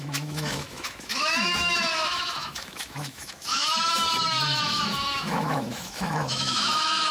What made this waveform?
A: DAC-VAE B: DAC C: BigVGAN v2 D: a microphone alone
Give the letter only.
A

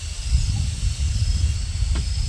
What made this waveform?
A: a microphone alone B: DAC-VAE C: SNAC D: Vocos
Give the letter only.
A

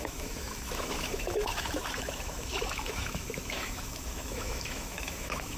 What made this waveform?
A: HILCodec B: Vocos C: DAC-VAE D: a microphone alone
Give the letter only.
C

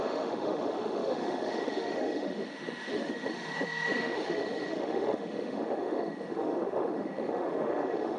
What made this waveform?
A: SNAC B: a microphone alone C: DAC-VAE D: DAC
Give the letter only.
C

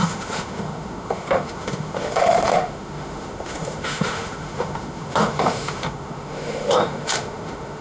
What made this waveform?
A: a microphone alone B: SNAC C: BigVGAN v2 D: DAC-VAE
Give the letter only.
D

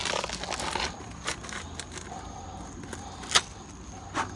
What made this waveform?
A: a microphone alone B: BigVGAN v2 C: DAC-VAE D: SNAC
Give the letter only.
A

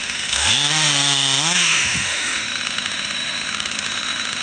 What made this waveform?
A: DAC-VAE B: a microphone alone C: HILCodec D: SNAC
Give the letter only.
A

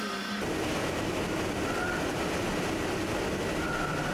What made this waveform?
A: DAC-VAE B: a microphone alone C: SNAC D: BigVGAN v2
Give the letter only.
B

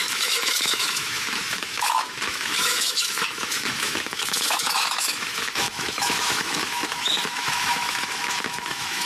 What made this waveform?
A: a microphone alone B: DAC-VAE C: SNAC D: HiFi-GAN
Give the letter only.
B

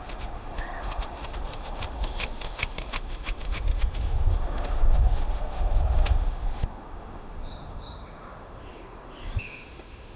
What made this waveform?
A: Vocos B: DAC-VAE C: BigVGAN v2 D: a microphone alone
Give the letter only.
B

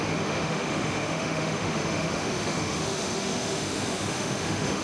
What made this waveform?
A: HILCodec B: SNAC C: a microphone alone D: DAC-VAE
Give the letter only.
D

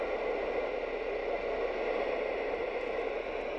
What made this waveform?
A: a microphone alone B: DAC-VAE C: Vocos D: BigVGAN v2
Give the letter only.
A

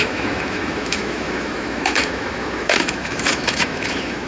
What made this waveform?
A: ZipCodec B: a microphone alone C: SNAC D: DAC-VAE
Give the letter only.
D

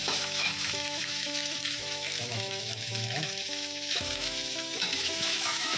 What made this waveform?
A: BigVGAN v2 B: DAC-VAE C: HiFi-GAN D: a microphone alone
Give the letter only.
B